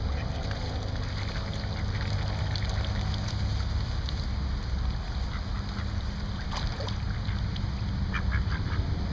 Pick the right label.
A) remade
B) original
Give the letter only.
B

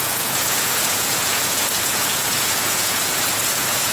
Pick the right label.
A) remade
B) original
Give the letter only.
A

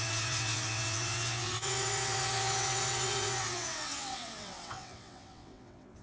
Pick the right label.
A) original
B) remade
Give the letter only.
B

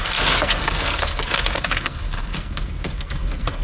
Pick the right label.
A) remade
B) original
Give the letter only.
A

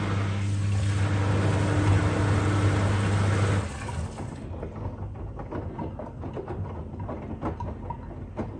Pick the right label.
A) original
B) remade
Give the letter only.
A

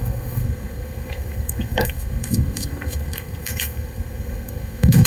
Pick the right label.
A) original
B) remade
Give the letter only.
B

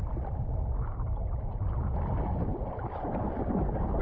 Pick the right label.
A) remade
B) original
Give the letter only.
B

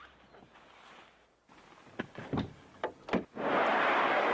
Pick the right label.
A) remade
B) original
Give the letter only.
B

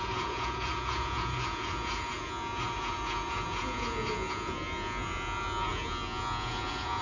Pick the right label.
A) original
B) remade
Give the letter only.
B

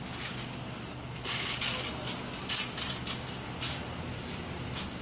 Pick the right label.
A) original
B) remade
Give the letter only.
A